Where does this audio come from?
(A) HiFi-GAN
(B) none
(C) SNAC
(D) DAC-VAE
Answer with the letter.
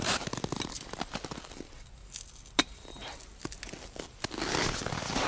B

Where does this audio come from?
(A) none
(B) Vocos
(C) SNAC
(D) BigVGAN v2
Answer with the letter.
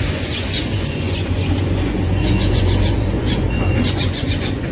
B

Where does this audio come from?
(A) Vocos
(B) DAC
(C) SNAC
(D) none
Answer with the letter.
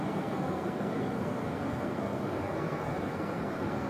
C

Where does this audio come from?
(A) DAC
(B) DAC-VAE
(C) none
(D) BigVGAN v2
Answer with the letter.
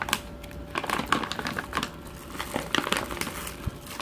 C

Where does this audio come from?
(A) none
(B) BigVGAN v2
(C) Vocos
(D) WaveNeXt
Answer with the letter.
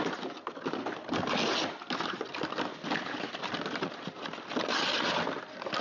A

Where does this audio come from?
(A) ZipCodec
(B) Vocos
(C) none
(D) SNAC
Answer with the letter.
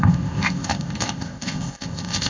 A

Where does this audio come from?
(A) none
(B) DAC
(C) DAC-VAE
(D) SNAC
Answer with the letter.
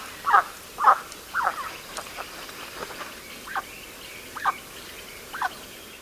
A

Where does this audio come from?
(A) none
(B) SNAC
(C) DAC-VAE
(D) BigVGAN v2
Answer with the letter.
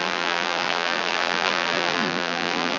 D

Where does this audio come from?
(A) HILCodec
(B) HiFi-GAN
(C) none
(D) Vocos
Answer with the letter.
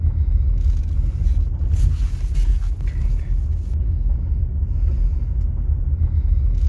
C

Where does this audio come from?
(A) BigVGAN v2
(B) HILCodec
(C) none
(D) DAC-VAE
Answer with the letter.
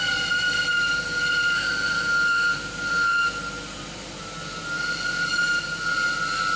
A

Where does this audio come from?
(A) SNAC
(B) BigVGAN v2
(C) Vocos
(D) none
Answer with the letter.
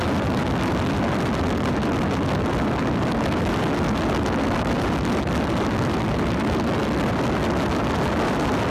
D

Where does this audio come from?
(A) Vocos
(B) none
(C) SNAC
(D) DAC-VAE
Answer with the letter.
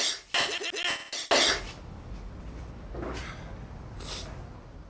B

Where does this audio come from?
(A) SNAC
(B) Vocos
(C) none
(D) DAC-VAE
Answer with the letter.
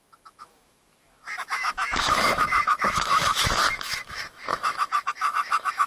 D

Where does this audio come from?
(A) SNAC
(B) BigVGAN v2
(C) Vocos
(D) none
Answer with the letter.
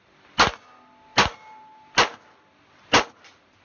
D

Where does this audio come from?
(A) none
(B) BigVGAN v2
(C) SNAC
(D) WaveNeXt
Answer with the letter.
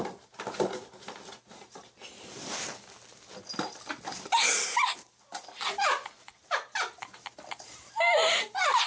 A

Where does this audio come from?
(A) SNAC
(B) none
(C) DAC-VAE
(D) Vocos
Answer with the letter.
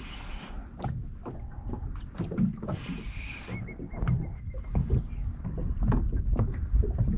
B